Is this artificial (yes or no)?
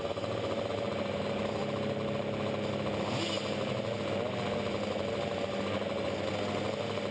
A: no